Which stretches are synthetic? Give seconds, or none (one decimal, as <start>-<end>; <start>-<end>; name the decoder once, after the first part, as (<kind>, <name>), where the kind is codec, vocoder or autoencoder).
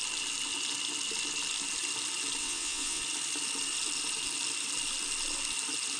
2.4-3.0 (vocoder, WaveNeXt)